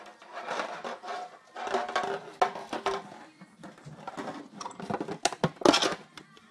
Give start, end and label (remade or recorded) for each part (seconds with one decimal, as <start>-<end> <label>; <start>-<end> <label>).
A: 0.0-6.5 recorded